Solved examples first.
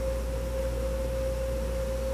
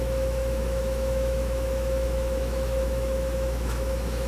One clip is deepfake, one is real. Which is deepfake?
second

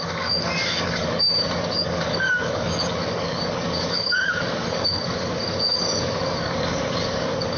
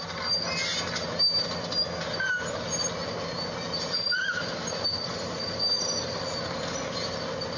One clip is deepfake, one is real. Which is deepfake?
first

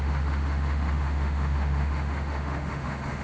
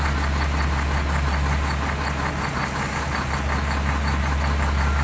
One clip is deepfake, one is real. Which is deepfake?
first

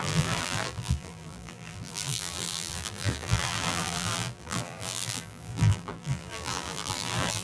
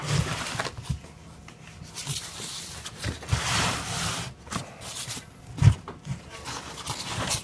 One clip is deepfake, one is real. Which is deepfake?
first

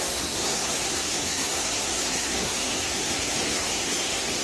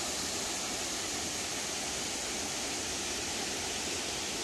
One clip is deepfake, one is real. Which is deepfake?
first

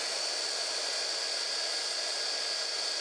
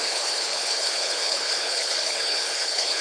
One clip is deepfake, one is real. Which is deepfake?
second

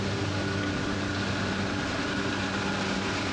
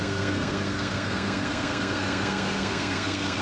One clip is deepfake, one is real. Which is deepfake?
second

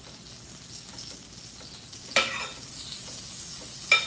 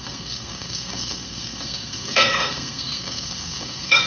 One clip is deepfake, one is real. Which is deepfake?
second